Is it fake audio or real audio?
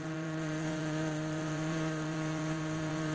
fake